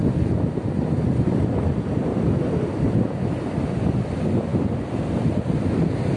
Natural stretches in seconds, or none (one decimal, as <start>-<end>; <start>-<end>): 0.0-6.2

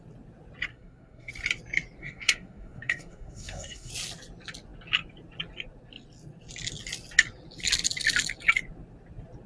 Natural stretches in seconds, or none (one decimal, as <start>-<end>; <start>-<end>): 0.0-0.7; 1.3-2.0; 3.9-9.5

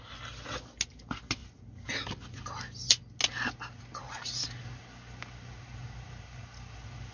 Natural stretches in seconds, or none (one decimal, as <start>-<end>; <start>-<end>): 0.0-7.1

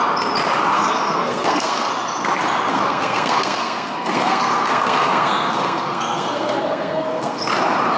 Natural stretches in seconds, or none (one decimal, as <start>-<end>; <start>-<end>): 0.0-0.7; 1.9-2.7; 7.4-8.0

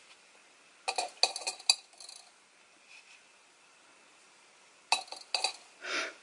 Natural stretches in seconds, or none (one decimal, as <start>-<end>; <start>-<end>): 0.0-6.2